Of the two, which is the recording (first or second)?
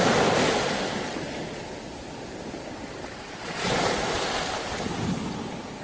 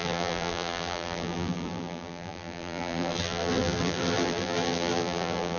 first